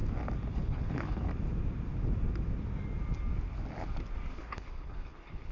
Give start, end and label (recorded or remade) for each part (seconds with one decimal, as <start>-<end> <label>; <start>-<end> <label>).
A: 0.0-0.5 recorded; 0.5-1.3 remade; 1.3-4.3 recorded; 4.3-5.5 remade